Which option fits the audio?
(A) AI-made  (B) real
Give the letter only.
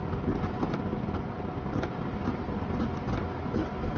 B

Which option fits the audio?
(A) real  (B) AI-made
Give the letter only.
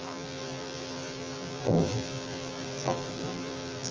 B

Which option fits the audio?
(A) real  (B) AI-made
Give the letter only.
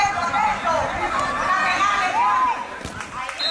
A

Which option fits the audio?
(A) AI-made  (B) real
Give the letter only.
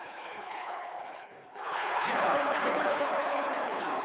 A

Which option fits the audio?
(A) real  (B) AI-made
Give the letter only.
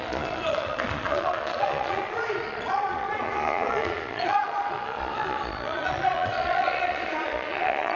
B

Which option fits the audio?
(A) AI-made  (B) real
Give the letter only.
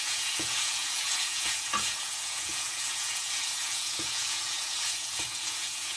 A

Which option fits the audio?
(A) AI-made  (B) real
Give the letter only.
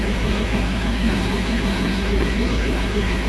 A